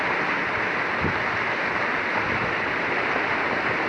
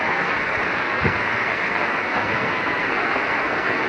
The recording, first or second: first